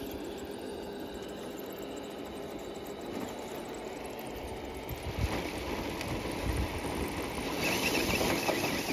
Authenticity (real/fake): real